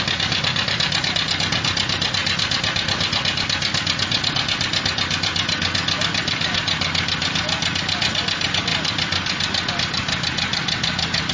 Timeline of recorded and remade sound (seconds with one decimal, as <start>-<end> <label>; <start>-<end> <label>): 0.0-11.3 recorded